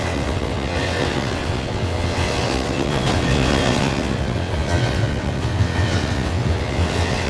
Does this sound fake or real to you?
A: fake